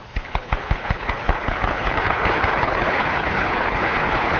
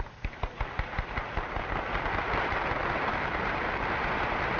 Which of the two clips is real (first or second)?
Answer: second